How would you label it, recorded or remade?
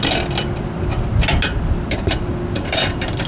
recorded